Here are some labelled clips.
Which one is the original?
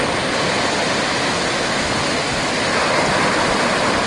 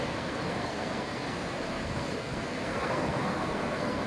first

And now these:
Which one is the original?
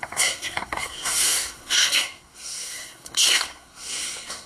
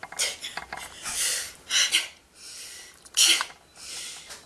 second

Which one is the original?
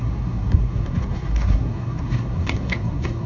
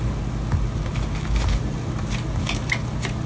second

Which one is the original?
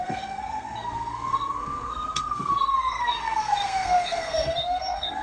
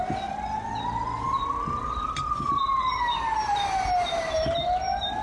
second